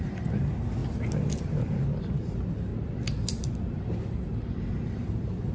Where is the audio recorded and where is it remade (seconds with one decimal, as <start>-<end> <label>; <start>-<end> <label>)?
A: 0.0-0.8 remade; 0.8-1.4 recorded; 1.4-2.7 remade; 2.7-4.9 recorded; 4.9-5.5 remade